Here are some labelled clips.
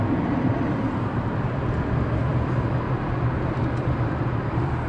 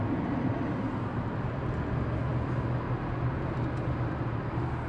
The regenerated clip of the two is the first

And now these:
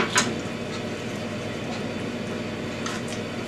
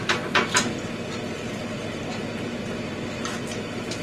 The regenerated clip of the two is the second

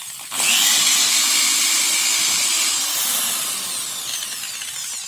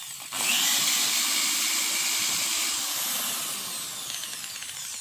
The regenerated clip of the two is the second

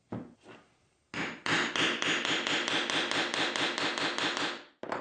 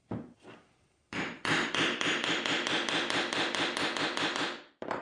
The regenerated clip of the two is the second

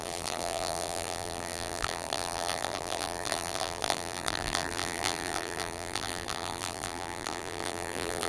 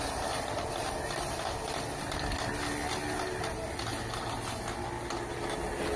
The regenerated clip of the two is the first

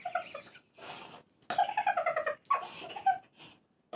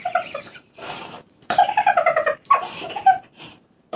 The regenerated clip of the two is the second